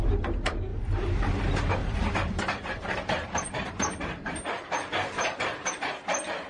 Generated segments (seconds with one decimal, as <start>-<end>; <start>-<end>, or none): 0.7-1.4; 1.8-5.7